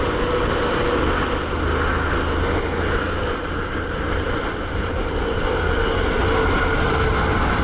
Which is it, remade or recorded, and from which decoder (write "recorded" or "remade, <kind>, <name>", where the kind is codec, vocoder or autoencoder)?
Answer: recorded